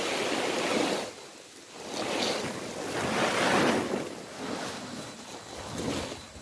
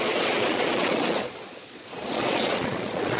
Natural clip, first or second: first